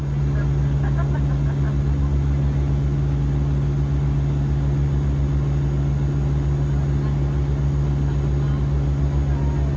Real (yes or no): yes